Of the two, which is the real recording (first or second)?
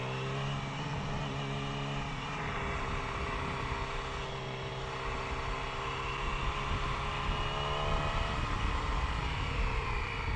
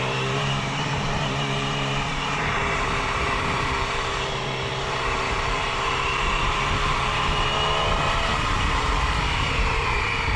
first